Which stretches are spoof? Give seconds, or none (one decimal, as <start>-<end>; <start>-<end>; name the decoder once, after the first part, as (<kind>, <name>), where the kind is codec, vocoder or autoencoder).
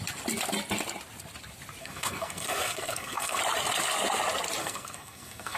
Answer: 1.8-3.4 (codec, SNAC); 4.6-5.6